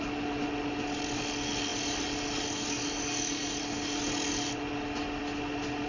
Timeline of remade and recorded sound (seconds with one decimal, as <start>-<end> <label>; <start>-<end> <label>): 0.0-5.9 recorded